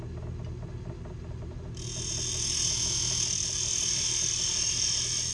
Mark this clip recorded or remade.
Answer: recorded